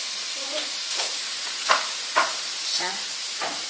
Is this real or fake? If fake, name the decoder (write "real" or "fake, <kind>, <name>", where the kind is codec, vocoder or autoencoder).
fake, vocoder, Vocos